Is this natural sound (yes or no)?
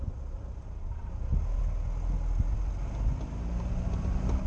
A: yes